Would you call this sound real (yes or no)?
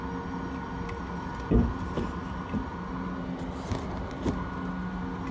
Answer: yes